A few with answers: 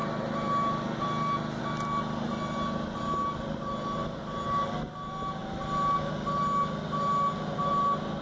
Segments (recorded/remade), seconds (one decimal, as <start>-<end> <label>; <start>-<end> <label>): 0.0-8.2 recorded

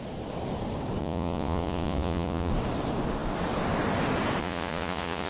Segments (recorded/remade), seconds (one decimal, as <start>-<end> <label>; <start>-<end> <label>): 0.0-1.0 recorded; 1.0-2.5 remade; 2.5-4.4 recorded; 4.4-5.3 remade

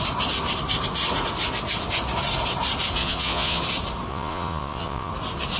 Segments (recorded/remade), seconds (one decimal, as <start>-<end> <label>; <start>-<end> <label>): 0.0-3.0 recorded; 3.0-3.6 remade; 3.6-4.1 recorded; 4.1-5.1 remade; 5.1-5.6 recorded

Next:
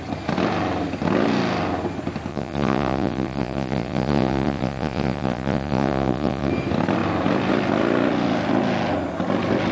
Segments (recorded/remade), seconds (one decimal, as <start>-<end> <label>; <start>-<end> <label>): 0.0-2.3 recorded; 2.3-6.5 remade; 6.5-9.7 recorded

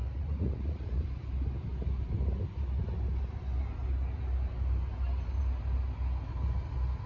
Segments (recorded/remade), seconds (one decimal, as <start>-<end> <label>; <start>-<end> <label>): 0.0-1.0 remade; 1.0-7.1 recorded

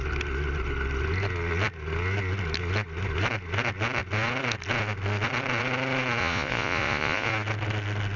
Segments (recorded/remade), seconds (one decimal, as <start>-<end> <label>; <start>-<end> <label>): 0.0-6.2 recorded; 6.2-7.3 remade; 7.3-8.2 recorded